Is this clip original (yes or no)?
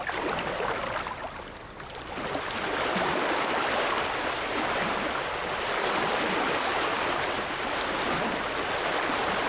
yes